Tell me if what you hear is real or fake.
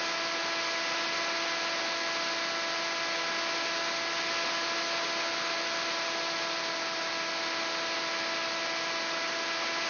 real